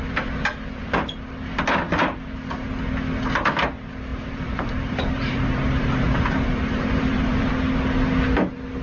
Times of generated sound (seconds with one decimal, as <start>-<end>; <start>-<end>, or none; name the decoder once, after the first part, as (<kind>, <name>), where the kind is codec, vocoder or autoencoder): 4.1-7.5 (vocoder, BigVGAN v2)